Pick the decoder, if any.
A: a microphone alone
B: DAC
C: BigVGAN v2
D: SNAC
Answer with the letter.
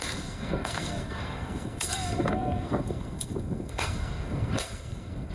D